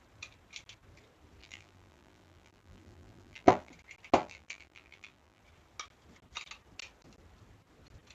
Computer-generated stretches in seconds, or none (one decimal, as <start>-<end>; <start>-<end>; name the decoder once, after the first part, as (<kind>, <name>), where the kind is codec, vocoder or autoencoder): 1.4-3.7 (vocoder, BigVGAN v2); 4.2-5.4